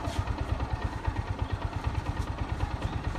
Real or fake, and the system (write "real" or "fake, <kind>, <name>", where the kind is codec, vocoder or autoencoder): real